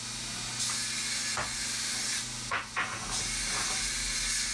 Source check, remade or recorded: recorded